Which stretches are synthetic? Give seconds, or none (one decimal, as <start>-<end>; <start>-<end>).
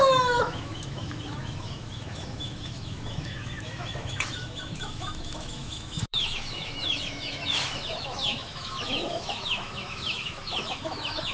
0.0-11.3